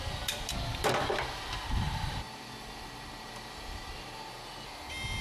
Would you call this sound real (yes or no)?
yes